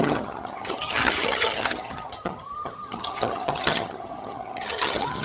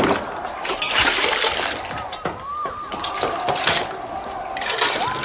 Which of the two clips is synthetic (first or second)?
first